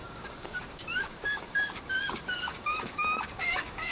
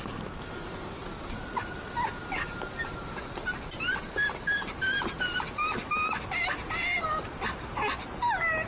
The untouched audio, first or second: second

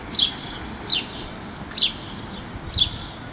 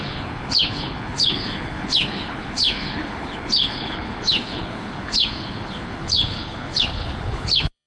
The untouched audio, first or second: first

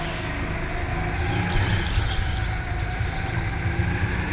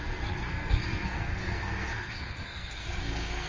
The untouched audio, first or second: first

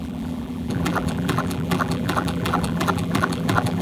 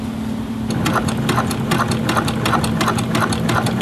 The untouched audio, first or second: second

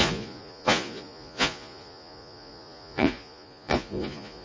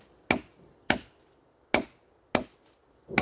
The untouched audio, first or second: second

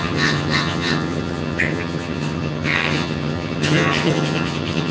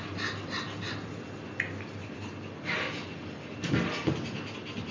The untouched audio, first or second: second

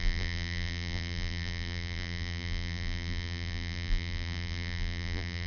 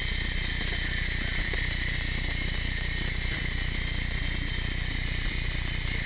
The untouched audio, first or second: second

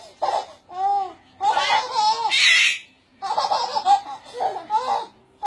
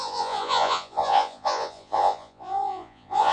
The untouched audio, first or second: first